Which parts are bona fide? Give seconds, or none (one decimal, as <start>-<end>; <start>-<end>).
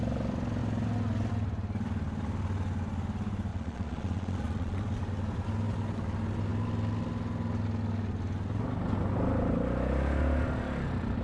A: 0.0-3.5; 4.8-11.2